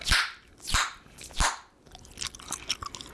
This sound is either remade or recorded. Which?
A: recorded